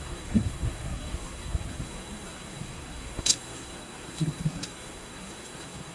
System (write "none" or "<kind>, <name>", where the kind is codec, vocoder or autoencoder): codec, SNAC